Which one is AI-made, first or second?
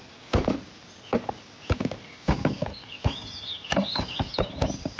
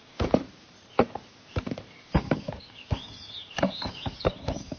second